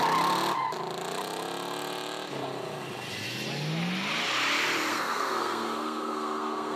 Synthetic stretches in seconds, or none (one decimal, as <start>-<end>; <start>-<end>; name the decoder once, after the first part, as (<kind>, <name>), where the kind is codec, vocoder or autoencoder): 4.9-6.8 (codec, SNAC)